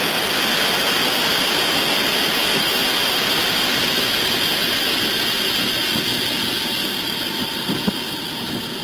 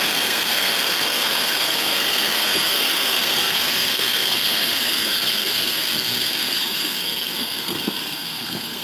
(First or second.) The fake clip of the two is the second